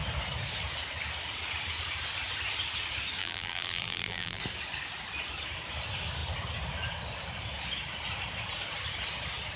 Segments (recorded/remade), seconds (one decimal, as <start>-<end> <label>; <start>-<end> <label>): 0.0-3.2 recorded; 3.2-4.4 remade; 4.4-9.6 recorded